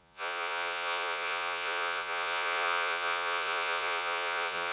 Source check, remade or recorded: remade